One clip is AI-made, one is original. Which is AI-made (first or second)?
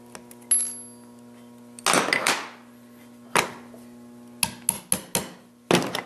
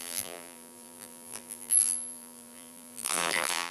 second